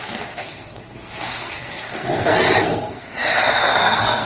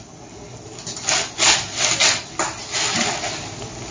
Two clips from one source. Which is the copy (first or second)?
first